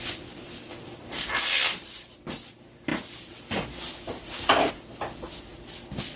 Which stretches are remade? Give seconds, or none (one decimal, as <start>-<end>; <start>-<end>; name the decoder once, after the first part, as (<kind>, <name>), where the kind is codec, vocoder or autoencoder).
none